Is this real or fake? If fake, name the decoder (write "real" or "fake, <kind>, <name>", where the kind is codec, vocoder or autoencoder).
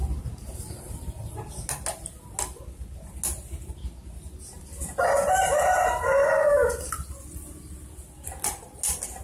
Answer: real